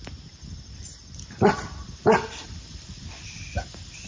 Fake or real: real